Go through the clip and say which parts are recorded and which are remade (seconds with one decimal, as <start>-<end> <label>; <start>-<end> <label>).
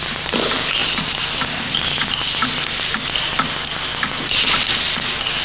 0.0-5.4 recorded